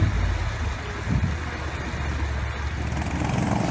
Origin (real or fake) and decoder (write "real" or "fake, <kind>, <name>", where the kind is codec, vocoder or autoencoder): real